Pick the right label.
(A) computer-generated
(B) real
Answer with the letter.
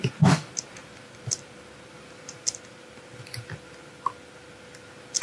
B